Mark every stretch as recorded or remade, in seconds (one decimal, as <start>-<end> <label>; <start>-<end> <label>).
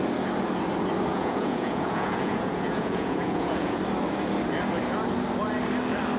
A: 0.0-1.1 recorded; 1.1-3.8 remade; 3.8-6.2 recorded